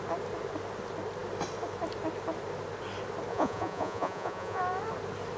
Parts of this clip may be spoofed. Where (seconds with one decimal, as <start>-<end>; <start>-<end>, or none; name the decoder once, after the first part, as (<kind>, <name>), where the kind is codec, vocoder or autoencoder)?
3.3-4.6 (vocoder, Vocos)